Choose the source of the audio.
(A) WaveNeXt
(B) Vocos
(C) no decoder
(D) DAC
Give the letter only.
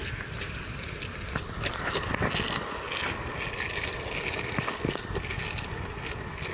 C